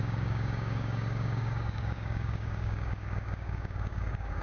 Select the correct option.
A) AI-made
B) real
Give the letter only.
A